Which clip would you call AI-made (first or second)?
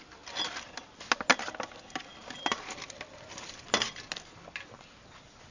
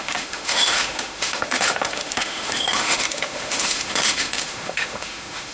second